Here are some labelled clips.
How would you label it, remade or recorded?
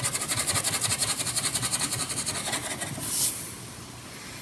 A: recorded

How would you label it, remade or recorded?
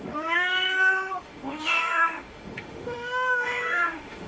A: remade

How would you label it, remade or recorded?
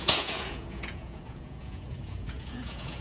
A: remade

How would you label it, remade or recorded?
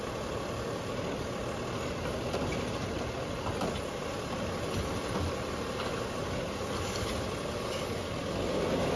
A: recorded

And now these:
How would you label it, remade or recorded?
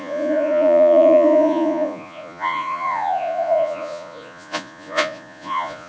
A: remade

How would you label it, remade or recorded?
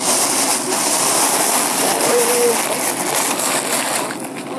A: recorded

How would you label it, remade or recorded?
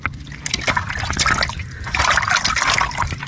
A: recorded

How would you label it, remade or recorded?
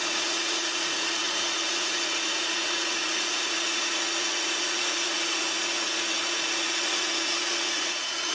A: remade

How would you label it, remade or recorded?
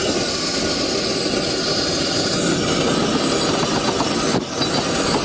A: recorded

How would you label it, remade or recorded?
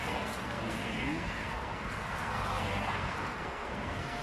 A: remade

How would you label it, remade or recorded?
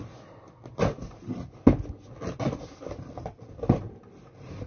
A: recorded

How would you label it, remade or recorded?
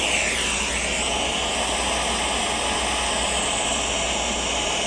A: recorded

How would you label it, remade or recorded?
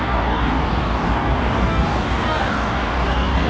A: remade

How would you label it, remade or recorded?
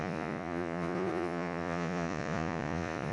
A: remade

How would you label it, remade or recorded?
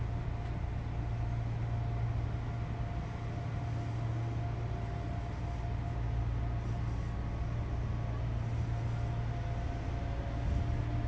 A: recorded